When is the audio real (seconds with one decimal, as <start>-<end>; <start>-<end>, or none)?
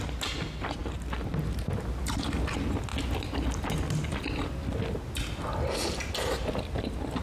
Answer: 0.0-7.2